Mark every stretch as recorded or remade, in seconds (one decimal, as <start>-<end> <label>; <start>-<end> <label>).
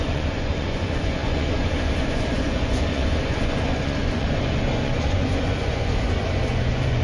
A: 0.0-7.0 remade